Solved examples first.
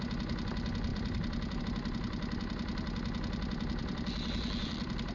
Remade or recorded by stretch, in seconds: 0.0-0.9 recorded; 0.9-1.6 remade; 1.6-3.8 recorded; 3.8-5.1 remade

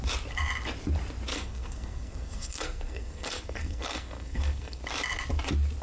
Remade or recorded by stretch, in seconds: 0.0-1.3 recorded; 1.3-4.8 remade; 4.8-5.8 recorded

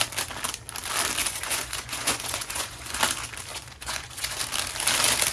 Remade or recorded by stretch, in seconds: 0.0-1.2 recorded; 1.2-3.0 remade; 3.0-3.5 recorded; 3.5-4.4 remade; 4.4-5.3 recorded

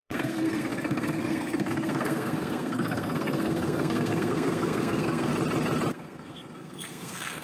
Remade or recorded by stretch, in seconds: 0.0-5.3 remade; 5.3-5.9 recorded; 5.9-7.4 remade

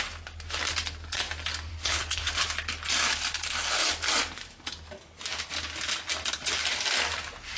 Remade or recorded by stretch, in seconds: 0.0-1.7 recorded; 1.7-2.3 remade; 2.3-7.6 recorded